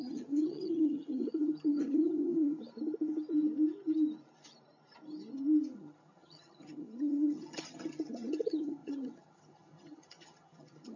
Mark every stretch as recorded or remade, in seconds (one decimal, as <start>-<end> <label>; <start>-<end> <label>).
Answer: 0.0-2.6 remade; 2.6-5.7 recorded; 5.7-11.0 remade